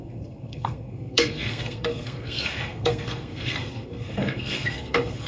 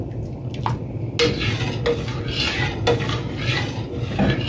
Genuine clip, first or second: second